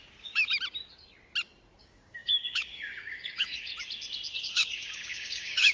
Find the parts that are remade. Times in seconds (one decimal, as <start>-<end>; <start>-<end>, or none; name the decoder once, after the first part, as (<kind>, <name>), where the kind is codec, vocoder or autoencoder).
0.0-0.5 (codec, DAC); 1.8-3.7; 4.4-5.7